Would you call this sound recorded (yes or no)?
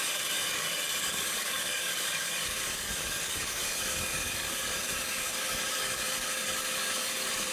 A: no